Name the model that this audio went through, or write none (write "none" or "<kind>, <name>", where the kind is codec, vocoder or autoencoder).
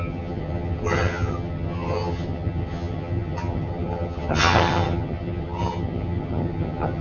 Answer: vocoder, HiFi-GAN